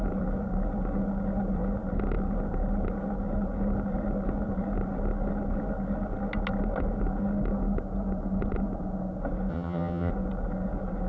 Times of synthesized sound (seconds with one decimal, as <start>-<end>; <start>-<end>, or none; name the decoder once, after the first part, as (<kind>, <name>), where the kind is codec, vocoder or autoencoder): 9.5-10.1 (vocoder, HiFi-GAN)